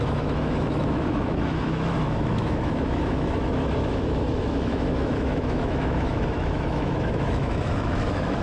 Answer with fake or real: fake